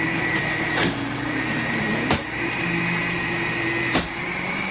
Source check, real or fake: fake